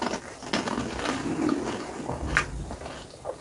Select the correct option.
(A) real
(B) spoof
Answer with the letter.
A